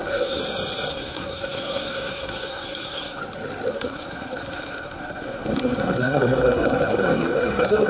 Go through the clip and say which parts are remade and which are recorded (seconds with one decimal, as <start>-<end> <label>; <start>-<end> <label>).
0.0-0.4 remade; 0.4-0.9 recorded; 0.9-3.2 remade; 3.2-3.7 recorded; 3.7-7.9 remade